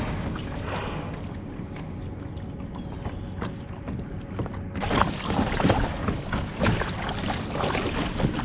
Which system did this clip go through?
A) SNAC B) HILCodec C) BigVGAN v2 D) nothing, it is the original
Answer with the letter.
D